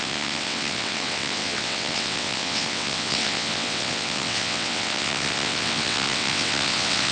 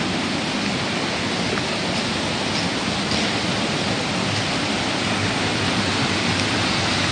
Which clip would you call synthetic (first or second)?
first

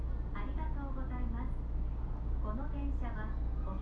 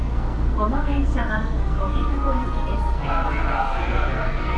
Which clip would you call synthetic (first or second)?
second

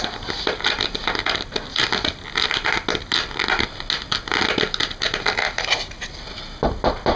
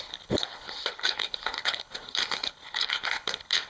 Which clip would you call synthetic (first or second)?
second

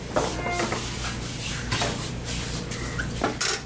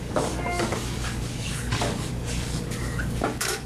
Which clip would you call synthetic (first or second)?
second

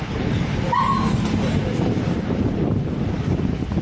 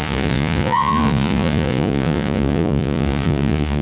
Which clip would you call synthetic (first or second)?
second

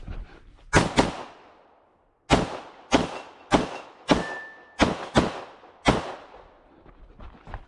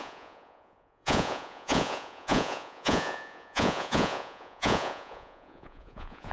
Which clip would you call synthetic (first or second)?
second